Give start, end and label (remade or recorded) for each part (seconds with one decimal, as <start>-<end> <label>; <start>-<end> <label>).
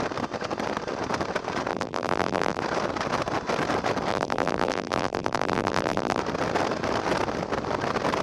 0.0-1.7 recorded; 1.7-2.6 remade; 2.6-4.1 recorded; 4.1-6.2 remade; 6.2-8.2 recorded